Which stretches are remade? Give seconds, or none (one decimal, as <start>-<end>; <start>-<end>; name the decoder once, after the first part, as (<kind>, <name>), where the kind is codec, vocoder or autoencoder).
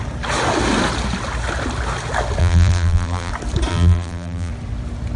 2.4-3.3 (vocoder, BigVGAN v2); 3.7-4.5